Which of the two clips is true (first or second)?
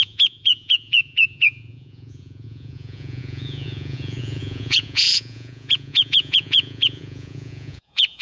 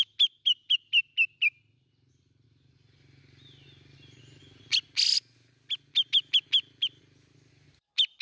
second